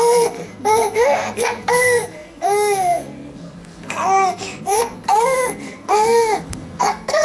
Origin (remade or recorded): remade